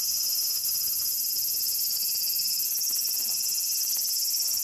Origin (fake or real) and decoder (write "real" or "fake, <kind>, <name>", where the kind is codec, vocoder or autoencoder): fake, autoencoder, DAC-VAE